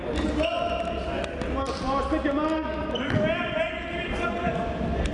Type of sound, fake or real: real